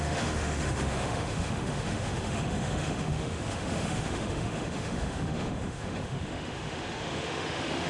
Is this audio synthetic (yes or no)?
yes